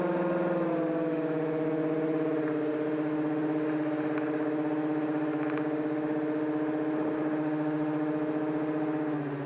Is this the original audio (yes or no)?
yes